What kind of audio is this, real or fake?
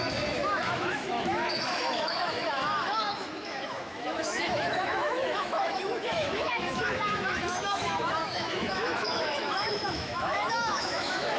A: fake